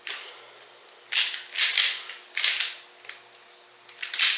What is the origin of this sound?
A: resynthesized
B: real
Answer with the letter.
B